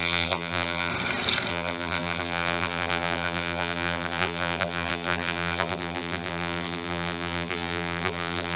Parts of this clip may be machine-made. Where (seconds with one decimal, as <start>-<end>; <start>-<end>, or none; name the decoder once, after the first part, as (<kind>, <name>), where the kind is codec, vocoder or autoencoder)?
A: 0.0-0.9 (vocoder, BigVGAN v2); 1.5-8.6